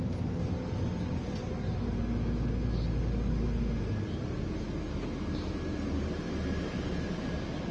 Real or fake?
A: real